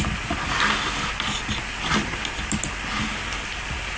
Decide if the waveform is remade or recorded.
recorded